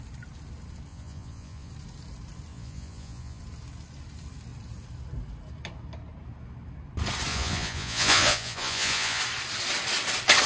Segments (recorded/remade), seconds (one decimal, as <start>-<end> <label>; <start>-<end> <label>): 0.0-0.9 recorded; 0.9-1.7 remade; 1.7-2.5 recorded; 2.5-3.4 remade; 3.4-7.3 recorded; 7.3-9.2 remade; 9.2-10.5 recorded